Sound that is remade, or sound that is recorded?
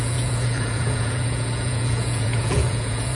remade